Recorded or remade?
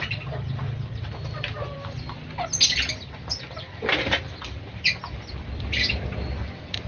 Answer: recorded